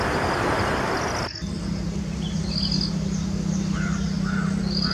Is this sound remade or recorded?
recorded